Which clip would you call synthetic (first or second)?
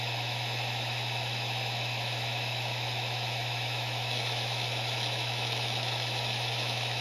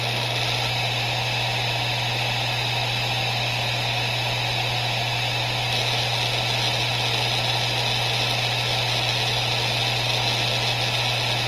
first